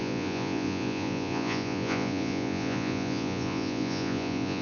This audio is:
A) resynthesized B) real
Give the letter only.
A